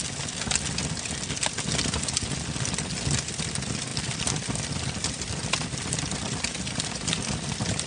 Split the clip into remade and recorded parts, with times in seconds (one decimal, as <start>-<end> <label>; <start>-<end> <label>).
0.0-3.9 recorded; 3.9-7.9 remade